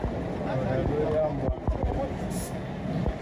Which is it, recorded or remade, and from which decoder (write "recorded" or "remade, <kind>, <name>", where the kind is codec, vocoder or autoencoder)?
recorded